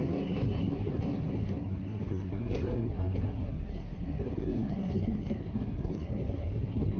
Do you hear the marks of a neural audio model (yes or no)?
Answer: yes